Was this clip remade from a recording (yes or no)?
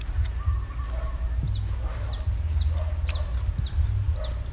no